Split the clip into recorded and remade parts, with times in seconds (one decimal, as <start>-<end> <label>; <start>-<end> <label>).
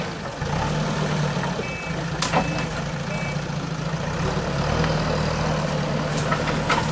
0.0-6.9 recorded